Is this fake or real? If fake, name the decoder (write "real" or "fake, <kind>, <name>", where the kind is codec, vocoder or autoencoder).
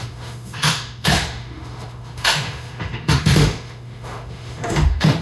fake, autoencoder, DAC-VAE